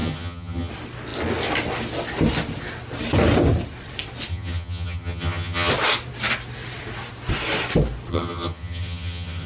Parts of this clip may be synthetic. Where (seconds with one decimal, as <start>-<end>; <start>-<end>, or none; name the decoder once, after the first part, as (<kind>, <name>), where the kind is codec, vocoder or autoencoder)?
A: 0.0-0.7 (vocoder, HiFi-GAN); 4.3-5.7; 8.1-9.5